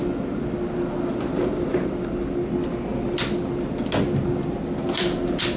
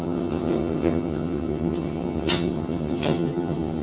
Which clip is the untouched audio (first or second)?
first